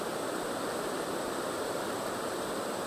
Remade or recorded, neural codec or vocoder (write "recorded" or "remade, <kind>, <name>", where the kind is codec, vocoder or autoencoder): remade, vocoder, BigVGAN v2